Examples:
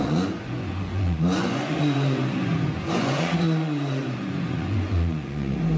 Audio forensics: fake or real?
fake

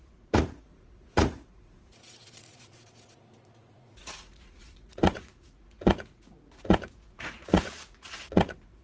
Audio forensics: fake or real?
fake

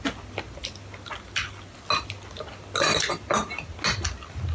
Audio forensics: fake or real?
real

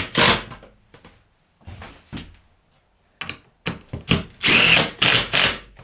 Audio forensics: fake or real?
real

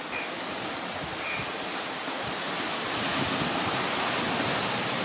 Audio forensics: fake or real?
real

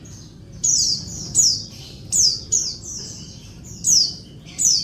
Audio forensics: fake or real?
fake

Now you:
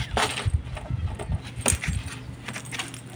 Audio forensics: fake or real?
real